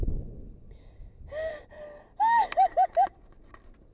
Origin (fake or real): real